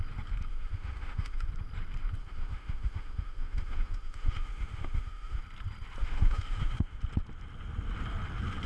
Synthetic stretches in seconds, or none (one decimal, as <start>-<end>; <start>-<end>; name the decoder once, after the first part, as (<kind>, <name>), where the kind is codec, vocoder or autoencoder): 0.5-1.5 (autoencoder, DAC-VAE); 2.2-5.4; 6.0-7.0